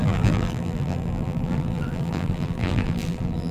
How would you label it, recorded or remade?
remade